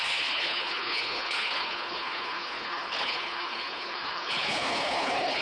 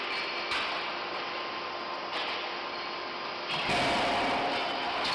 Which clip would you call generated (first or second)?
first